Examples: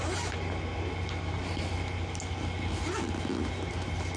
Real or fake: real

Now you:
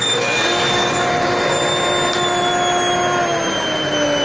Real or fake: real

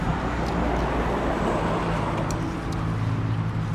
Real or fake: real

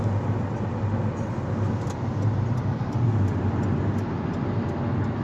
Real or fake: real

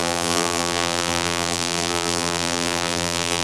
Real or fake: fake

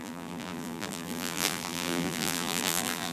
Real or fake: fake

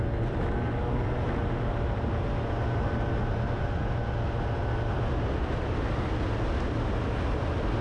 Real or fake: real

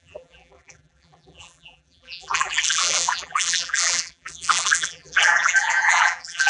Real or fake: fake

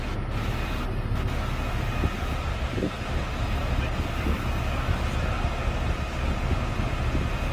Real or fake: real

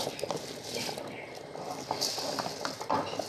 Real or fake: real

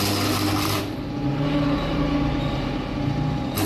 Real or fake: real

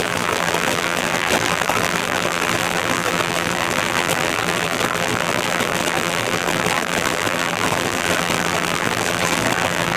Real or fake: fake